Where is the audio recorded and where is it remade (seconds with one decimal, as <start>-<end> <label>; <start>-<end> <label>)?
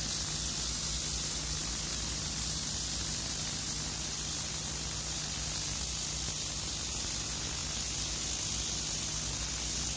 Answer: 0.0-10.0 recorded